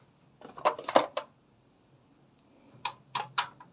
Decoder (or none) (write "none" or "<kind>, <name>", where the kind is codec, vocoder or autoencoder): none